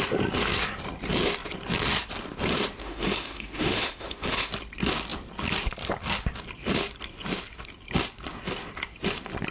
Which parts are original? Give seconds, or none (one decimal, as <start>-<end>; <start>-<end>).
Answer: 0.0-2.8; 4.5-9.5